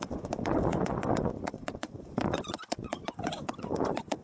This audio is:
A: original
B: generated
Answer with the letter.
B